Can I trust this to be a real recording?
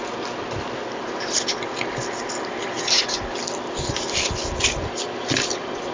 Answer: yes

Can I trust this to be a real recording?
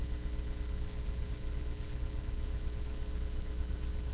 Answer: yes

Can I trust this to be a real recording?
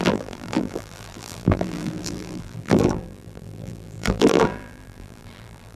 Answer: no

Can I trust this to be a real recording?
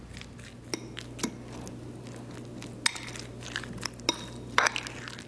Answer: yes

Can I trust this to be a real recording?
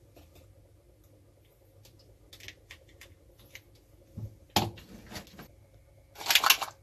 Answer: yes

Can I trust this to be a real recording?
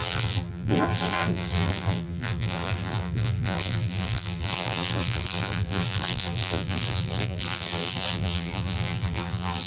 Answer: no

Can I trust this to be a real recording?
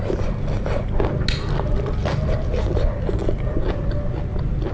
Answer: yes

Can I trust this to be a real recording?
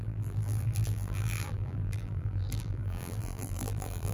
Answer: no